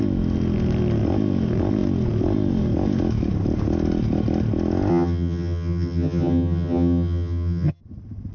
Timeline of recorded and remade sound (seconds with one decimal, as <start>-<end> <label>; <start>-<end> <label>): 0.0-4.9 recorded; 4.9-7.8 remade; 7.8-8.3 recorded